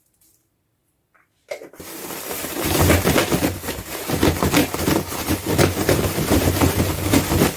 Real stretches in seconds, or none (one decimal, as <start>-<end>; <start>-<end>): 0.8-2.5